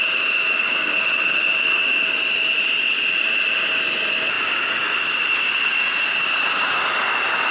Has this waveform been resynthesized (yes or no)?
no